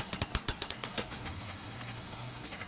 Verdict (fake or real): fake